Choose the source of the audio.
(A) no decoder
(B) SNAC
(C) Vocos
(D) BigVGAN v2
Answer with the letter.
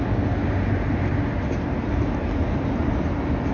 A